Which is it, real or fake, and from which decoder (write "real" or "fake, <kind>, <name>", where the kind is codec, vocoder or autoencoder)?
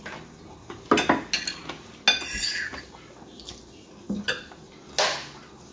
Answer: real